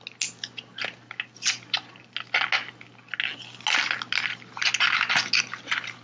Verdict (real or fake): real